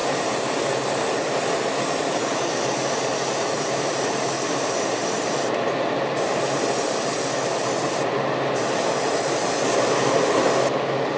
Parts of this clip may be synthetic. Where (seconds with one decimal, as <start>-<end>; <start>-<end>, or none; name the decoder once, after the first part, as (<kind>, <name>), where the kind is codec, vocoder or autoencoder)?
none